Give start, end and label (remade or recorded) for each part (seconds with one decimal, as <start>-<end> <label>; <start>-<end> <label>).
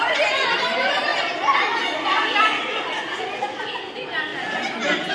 0.0-5.1 recorded